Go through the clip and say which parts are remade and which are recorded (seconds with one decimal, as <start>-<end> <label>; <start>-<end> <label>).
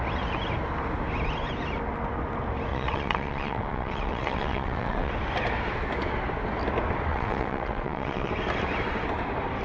0.0-2.7 recorded; 2.7-5.1 remade; 5.1-7.1 recorded; 7.1-8.3 remade; 8.3-9.6 recorded